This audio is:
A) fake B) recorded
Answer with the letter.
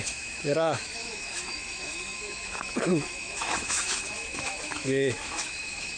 A